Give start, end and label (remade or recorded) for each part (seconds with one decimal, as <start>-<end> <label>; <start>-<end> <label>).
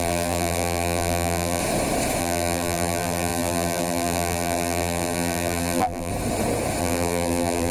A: 0.0-1.6 remade; 1.6-2.2 recorded; 2.2-6.1 remade; 6.1-6.8 recorded; 6.8-7.7 remade